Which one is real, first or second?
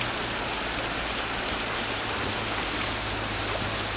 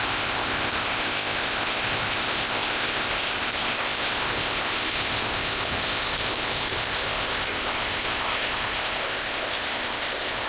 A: first